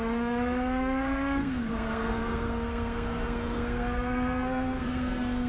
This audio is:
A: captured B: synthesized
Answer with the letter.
B